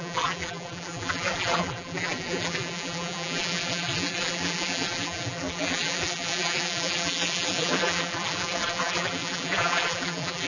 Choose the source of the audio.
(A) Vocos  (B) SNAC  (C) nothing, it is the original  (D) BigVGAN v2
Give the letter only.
D